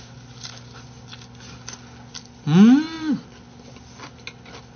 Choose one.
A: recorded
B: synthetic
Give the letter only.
A